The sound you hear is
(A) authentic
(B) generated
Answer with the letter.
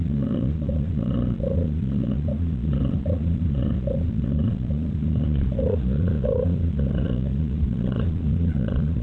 B